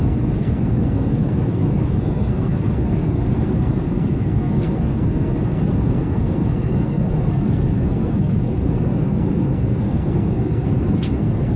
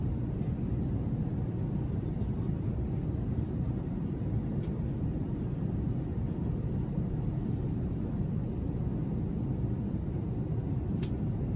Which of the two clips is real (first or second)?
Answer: second